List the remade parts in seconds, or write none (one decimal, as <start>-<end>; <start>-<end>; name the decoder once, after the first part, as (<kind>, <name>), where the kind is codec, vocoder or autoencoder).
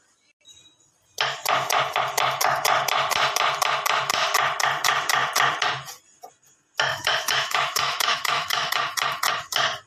6.9-8.7 (autoencoder, DAC-VAE)